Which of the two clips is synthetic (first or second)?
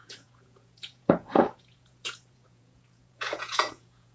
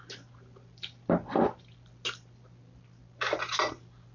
first